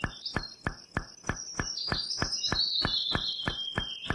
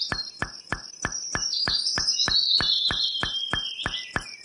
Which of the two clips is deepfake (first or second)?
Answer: second